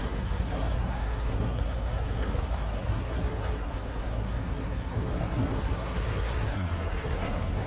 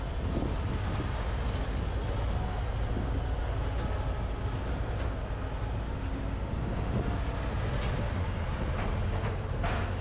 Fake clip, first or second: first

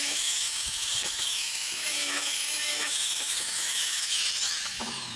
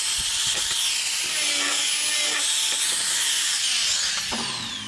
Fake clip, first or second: first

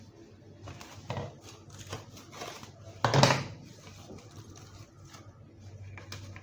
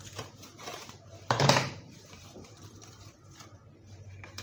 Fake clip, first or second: second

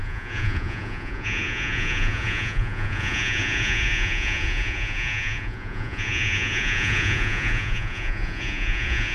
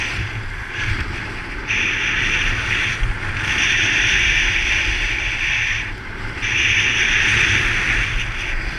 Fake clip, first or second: first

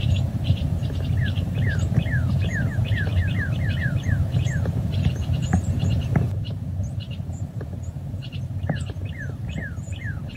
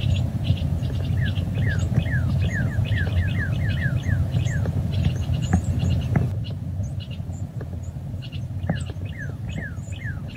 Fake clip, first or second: first